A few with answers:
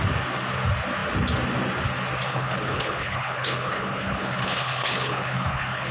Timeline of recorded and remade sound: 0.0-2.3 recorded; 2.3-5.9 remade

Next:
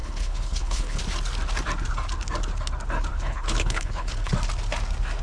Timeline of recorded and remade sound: 0.0-1.0 remade; 1.0-3.1 recorded; 3.1-4.3 remade; 4.3-5.2 recorded